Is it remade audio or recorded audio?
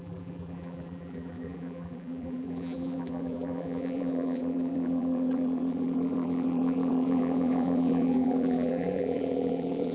remade